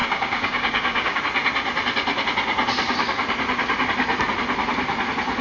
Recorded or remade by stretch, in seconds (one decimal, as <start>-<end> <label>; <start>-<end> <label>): 0.0-1.2 remade; 1.2-5.4 recorded